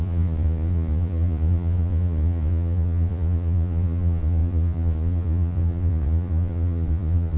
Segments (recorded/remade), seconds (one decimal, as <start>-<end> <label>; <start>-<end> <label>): 0.0-7.4 remade